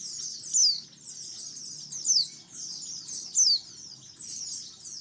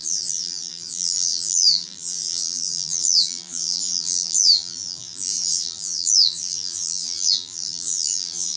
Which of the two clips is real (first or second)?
first